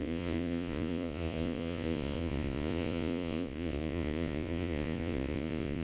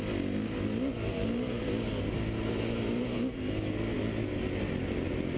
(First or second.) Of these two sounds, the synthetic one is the first